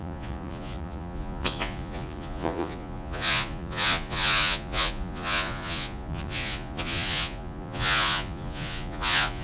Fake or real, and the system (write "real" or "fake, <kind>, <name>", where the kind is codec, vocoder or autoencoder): fake, vocoder, Vocos